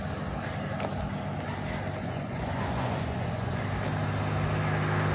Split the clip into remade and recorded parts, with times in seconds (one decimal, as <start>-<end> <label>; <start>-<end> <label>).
0.0-2.0 recorded; 2.0-3.6 remade; 3.6-5.1 recorded

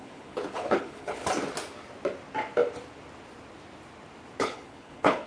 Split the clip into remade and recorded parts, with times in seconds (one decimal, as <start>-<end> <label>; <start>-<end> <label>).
0.0-1.2 remade; 1.2-4.4 recorded; 4.4-5.3 remade